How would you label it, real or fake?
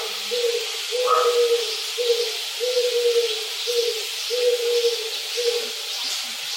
real